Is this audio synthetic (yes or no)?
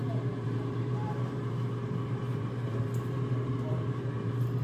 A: yes